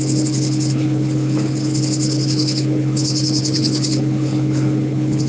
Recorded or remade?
remade